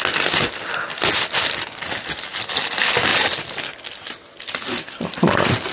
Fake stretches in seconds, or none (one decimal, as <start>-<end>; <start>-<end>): none